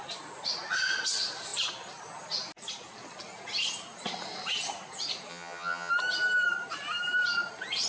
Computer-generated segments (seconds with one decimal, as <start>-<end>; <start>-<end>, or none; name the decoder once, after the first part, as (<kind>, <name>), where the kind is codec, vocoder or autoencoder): 5.3-5.9 (vocoder, HiFi-GAN)